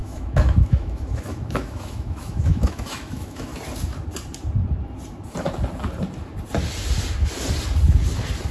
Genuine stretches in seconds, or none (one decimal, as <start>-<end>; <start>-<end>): 3.5-8.5